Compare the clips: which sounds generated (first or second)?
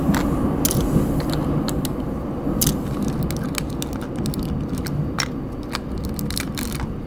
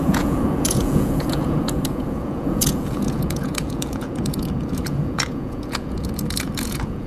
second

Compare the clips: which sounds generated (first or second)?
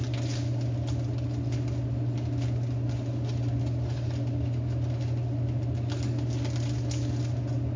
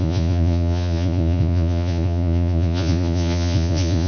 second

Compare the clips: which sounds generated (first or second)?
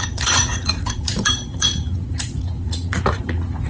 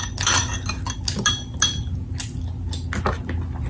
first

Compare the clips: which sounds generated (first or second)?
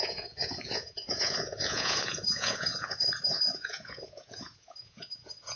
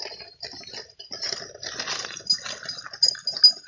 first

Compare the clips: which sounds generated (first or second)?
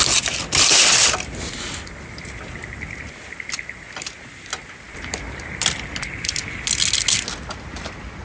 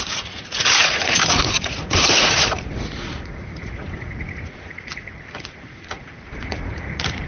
second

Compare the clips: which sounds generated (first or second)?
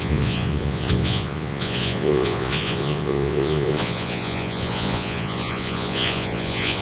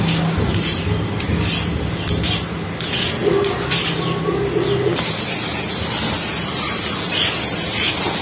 first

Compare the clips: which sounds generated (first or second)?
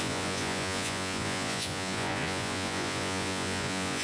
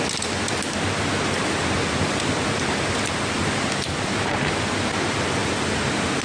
first